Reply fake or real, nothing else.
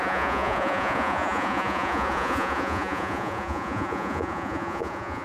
fake